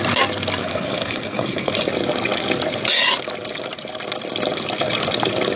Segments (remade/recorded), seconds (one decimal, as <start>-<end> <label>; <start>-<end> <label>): 0.0-0.6 recorded; 0.6-1.7 remade; 1.7-5.6 recorded